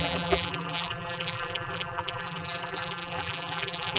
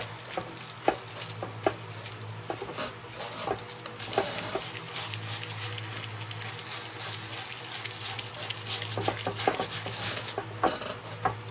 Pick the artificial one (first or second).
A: first